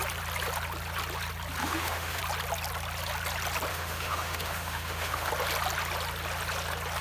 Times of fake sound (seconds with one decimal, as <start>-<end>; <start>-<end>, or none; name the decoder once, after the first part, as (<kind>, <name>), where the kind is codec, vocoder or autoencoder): 1.6-2.2 (autoencoder, DAC-VAE); 3.7-5.3